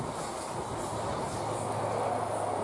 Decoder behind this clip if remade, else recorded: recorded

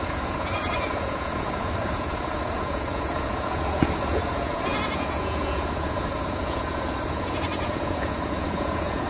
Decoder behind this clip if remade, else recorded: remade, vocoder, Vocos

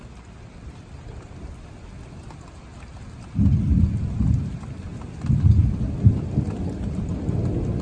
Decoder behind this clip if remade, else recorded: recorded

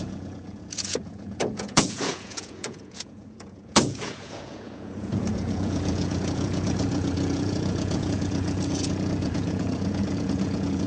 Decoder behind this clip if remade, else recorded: remade, vocoder, Vocos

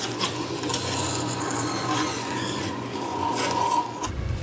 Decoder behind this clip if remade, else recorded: remade, vocoder, Vocos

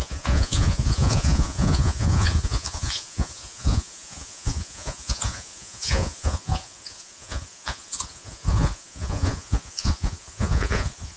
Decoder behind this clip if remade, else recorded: remade, vocoder, Vocos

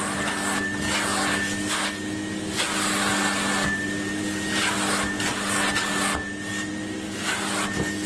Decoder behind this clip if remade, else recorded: recorded